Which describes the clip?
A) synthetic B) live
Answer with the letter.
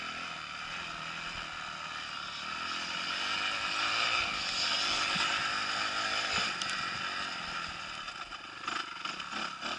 B